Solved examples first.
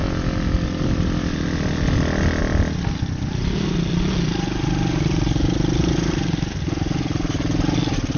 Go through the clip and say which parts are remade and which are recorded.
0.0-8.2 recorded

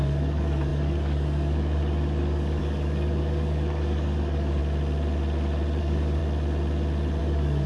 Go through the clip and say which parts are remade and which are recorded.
0.0-4.6 remade; 4.6-5.8 recorded; 5.8-6.2 remade; 6.2-7.2 recorded; 7.2-7.7 remade

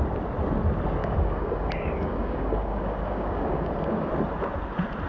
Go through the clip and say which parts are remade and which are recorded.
0.0-1.0 recorded; 1.0-4.1 remade; 4.1-5.1 recorded

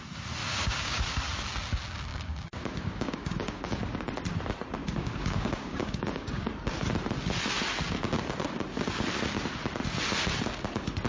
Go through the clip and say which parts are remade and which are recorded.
0.0-0.4 recorded; 0.4-1.0 remade; 1.0-2.1 recorded; 2.1-4.1 remade; 4.1-4.8 recorded; 4.8-6.5 remade; 6.5-11.1 recorded